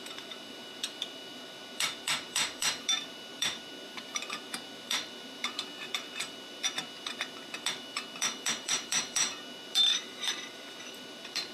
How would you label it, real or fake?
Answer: fake